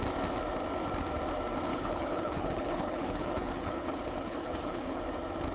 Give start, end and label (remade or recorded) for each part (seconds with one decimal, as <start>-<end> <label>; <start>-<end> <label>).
0.0-1.7 recorded; 1.7-5.0 remade; 5.0-5.5 recorded